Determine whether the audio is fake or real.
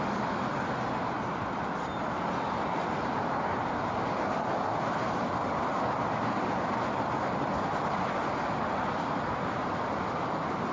real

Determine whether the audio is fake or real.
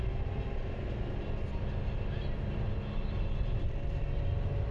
real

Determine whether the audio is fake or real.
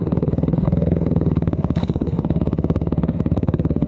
fake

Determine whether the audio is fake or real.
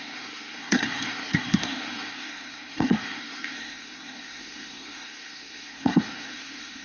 fake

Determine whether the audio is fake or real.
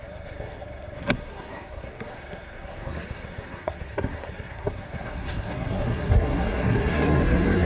fake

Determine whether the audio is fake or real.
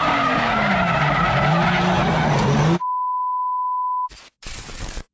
real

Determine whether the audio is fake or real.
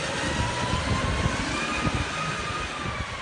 real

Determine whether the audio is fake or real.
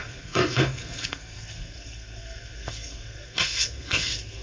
fake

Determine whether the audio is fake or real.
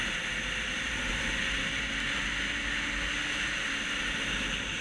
real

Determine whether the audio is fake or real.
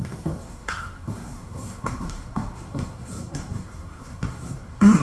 fake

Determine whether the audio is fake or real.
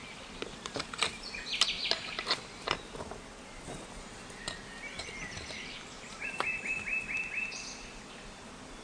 real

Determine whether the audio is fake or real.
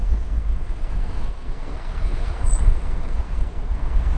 fake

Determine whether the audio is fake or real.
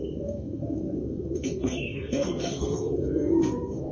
fake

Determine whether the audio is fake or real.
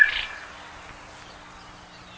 real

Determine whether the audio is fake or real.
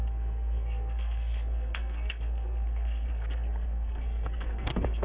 fake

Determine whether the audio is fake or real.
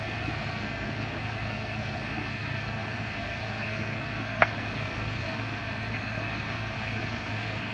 fake